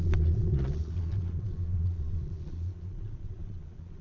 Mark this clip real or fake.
fake